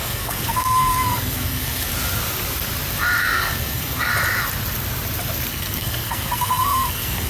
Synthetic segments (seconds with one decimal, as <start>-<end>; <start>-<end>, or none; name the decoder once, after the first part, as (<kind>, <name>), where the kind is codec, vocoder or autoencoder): 0.0-1.9 (codec, SNAC); 3.2-4.1; 5.5-7.3